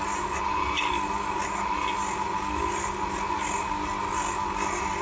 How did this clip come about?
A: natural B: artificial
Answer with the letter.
A